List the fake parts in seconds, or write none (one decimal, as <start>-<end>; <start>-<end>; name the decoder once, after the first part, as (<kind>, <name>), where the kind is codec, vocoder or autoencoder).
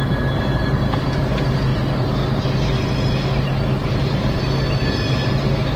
3.8-4.4 (vocoder, BigVGAN v2)